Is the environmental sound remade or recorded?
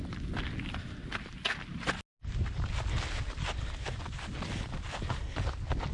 recorded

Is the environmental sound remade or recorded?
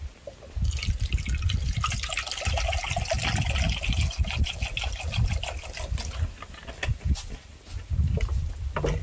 recorded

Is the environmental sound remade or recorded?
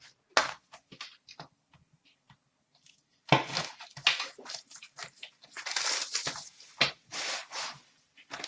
recorded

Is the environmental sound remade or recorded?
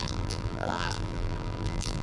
remade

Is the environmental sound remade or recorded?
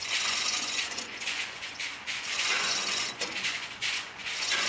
remade